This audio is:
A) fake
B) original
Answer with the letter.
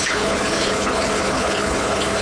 A